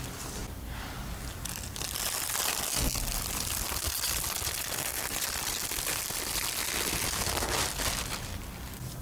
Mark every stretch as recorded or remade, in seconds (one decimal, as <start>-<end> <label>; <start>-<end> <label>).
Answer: 0.0-9.0 recorded